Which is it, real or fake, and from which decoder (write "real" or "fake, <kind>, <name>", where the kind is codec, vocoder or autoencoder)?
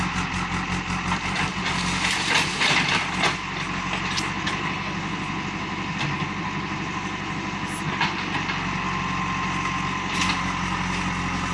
real